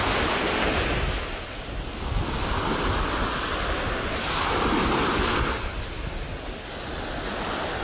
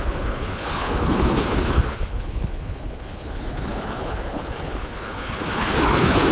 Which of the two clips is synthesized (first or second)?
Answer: second